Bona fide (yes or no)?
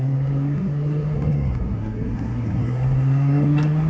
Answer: no